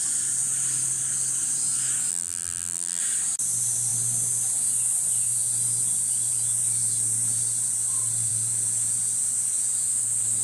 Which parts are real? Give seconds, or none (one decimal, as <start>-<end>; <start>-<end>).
0.0-2.1; 3.0-10.4